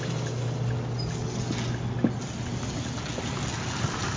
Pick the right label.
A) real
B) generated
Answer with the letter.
A